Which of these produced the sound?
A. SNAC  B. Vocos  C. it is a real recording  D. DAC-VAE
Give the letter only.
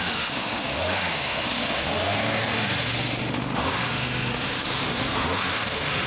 D